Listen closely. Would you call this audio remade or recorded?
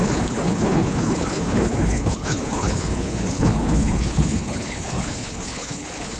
remade